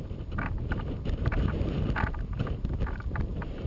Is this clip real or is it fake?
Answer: fake